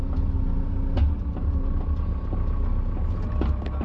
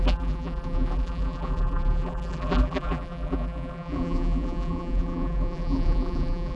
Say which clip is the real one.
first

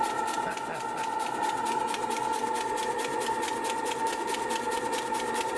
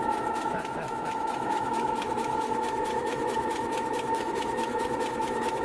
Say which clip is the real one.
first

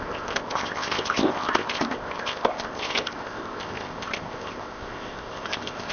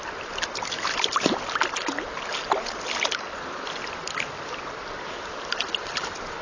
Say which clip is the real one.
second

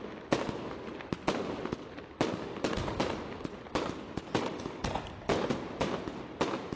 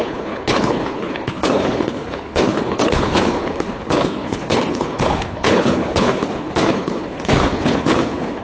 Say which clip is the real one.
first